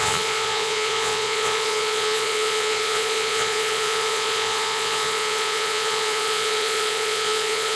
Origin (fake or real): fake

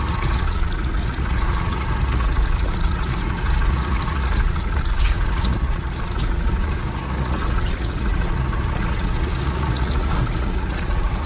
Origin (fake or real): fake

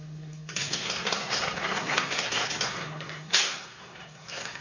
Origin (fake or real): fake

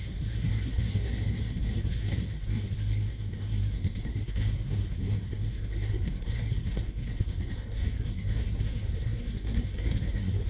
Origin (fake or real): fake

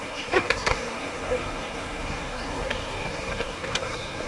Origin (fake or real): fake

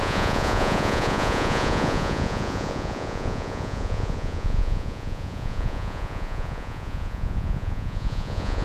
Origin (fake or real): fake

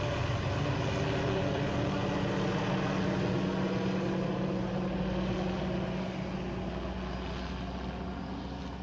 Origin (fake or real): real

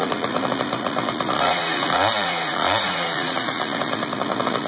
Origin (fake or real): fake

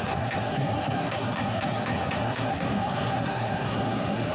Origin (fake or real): fake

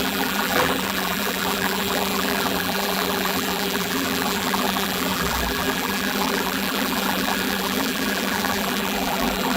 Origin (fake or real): fake